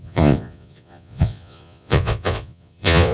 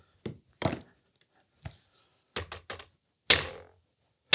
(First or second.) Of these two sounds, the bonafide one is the second